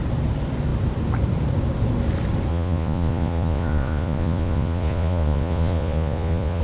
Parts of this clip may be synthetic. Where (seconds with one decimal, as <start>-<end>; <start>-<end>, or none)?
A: 2.5-6.6

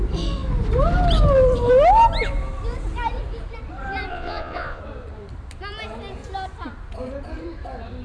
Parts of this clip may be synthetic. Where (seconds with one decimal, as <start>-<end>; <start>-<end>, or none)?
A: 4.1-4.8

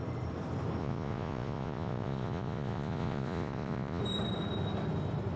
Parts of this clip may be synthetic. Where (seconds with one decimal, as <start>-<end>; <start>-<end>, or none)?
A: 0.8-4.0

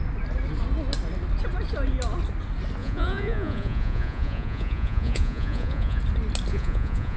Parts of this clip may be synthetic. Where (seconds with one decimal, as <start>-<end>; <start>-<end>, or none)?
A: 2.8-6.0; 6.5-7.2